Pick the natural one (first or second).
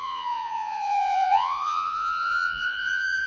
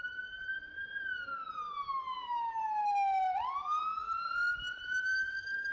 second